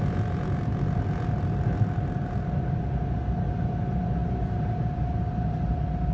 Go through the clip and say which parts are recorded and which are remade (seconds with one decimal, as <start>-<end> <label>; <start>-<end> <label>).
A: 0.0-6.1 recorded